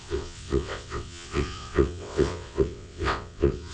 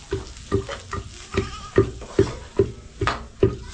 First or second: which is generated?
first